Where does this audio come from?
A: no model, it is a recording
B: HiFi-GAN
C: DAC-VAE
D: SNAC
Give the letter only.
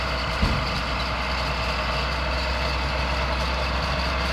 A